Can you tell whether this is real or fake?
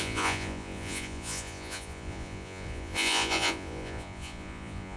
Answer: fake